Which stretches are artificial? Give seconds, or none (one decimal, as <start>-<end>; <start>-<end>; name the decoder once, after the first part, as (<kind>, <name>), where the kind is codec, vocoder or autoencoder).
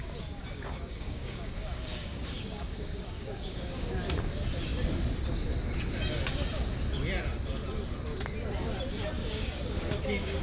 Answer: 0.4-3.9 (codec, DAC); 9.2-10.4